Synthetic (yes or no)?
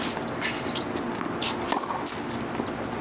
no